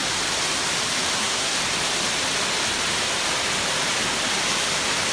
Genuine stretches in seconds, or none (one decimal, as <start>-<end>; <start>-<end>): 0.0-1.2; 1.6-5.1